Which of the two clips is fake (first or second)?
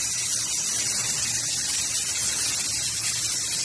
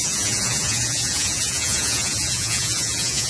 second